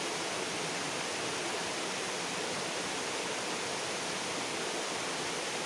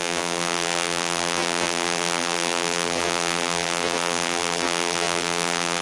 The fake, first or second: second